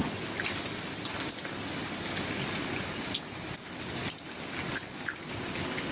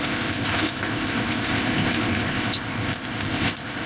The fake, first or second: second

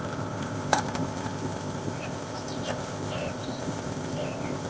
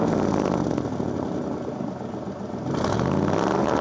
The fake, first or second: first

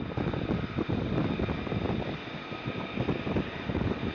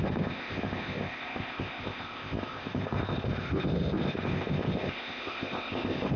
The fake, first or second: second